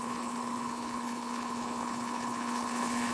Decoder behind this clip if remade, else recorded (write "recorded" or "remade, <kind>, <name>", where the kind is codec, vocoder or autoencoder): remade, codec, HILCodec